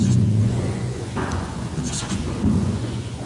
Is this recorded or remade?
remade